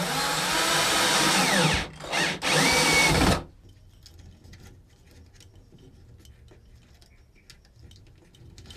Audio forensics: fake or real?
real